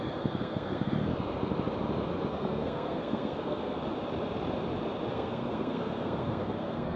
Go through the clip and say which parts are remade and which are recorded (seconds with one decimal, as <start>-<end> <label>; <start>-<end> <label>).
0.0-1.1 remade; 1.1-2.3 recorded; 2.3-3.8 remade; 3.8-5.1 recorded; 5.1-7.0 remade